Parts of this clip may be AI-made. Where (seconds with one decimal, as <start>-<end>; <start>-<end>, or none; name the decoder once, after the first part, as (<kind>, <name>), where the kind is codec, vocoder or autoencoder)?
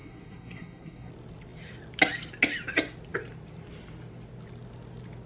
0.0-1.1 (codec, SNAC)